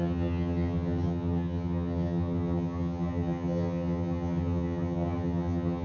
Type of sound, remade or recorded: remade